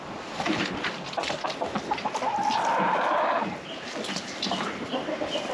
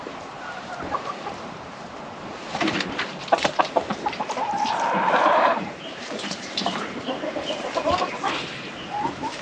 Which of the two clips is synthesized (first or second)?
second